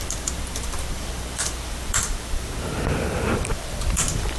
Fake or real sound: fake